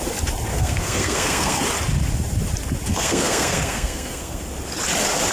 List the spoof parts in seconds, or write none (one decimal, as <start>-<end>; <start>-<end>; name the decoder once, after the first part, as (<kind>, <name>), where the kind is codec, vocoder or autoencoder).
0.5-1.6 (codec, SNAC); 2.9-4.4